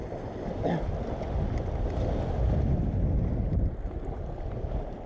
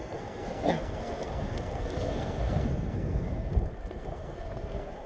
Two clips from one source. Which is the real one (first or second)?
first